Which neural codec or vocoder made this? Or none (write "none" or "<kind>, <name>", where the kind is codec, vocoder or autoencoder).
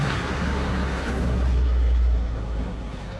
codec, SNAC